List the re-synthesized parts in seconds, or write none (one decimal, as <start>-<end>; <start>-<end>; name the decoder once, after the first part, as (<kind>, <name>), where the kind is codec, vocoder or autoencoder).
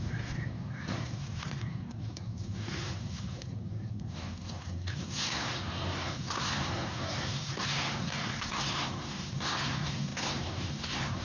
0.0-11.2 (codec, SNAC)